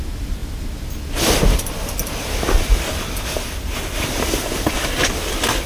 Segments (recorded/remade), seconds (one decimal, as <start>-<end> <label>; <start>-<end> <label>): 0.0-5.7 recorded